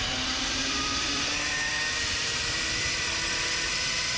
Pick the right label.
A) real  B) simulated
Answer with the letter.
B